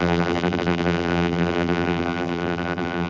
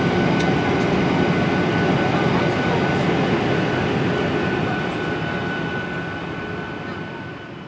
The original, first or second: second